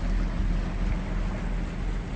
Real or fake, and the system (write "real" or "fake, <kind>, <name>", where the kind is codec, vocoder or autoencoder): real